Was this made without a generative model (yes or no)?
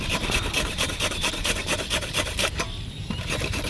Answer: no